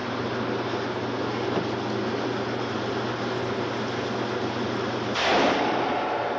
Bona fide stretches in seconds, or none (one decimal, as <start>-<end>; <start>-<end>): 0.0-5.3